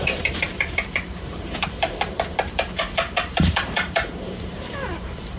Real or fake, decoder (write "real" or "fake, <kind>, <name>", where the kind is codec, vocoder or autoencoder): fake, vocoder, BigVGAN v2